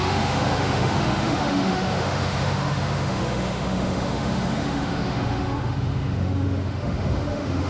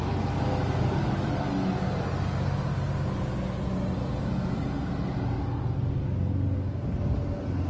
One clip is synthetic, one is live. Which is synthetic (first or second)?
first